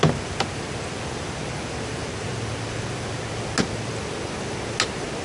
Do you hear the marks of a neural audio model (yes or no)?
no